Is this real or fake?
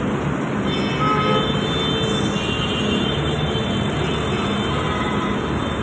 real